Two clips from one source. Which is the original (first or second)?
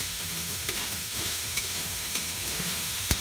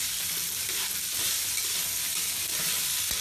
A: second